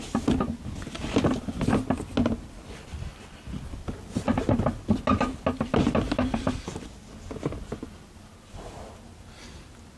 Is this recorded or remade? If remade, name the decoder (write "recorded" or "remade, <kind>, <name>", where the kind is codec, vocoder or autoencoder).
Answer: recorded